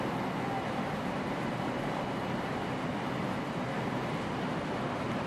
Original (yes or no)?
yes